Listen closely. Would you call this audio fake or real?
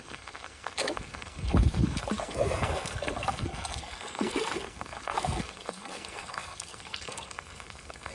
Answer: fake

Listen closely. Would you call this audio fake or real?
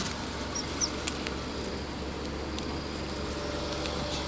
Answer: real